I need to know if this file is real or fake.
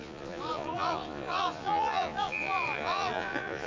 fake